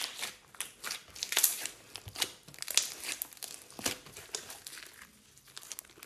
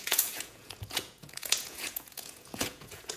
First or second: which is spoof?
second